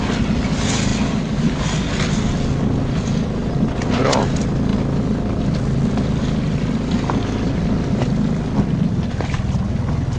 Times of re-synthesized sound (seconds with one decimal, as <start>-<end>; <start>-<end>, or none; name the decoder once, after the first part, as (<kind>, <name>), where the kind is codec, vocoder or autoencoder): none